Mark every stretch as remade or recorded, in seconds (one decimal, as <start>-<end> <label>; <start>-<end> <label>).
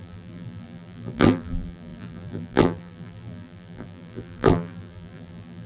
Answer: 0.0-5.7 remade